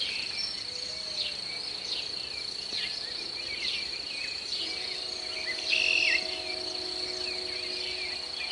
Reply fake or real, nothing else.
real